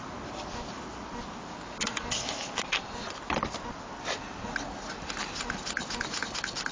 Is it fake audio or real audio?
real